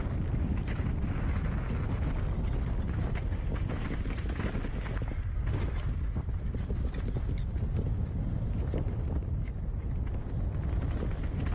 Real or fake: real